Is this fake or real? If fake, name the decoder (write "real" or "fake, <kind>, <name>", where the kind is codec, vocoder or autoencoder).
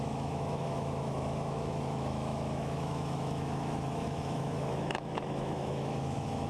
fake, autoencoder, DAC-VAE